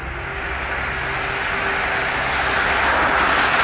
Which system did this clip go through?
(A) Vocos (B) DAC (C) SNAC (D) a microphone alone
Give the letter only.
D